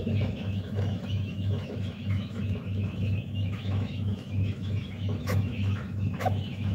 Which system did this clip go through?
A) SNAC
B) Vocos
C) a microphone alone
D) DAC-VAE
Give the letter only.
D